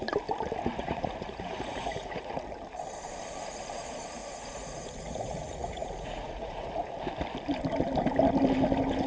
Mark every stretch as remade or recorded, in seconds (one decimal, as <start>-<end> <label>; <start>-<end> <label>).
0.0-0.7 recorded; 0.7-2.3 remade; 2.3-4.2 recorded; 4.2-6.7 remade; 6.7-9.1 recorded